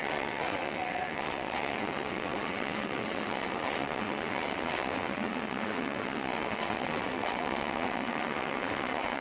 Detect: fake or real fake